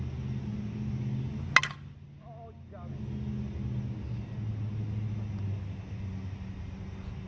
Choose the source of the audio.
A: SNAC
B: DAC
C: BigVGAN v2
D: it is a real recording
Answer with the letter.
D